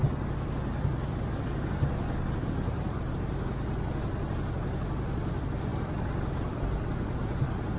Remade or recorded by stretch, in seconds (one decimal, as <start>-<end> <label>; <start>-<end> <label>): 0.0-5.7 recorded; 5.7-6.6 remade; 6.6-7.8 recorded